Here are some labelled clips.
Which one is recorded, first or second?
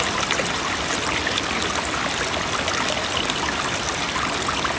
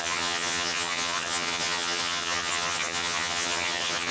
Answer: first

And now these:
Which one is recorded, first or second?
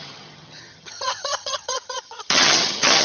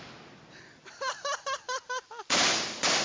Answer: second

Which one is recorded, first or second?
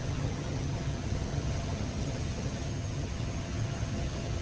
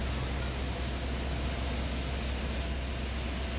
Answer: second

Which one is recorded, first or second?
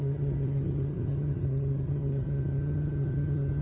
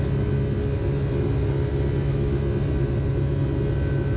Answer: second